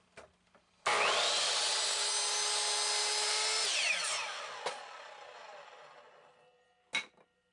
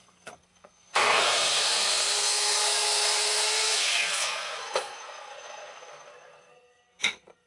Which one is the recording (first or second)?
first